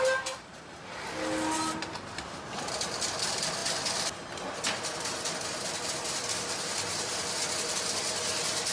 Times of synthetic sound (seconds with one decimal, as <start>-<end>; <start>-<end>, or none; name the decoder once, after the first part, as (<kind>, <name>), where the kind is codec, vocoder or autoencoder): none